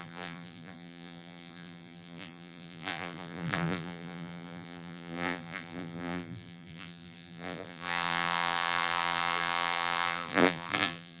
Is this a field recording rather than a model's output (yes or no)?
no